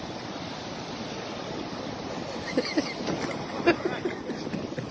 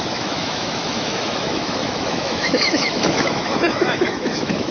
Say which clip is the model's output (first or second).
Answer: second